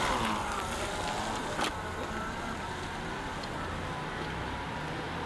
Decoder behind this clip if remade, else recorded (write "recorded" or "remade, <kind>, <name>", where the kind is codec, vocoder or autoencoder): recorded